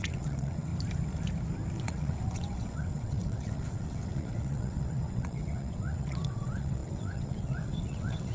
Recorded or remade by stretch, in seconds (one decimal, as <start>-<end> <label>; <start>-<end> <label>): 0.0-0.7 remade; 0.7-1.8 recorded; 1.8-8.3 remade